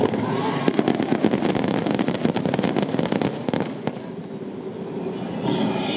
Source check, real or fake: real